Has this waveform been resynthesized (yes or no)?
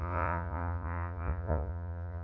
yes